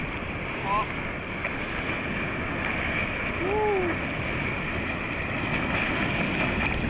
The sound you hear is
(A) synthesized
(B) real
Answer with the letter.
B